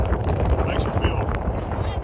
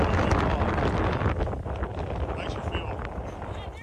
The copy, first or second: first